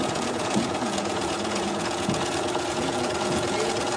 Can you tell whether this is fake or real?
fake